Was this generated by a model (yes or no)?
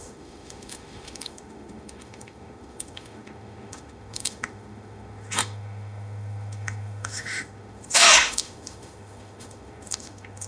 yes